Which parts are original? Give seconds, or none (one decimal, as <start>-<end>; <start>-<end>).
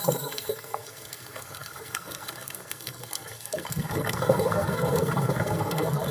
none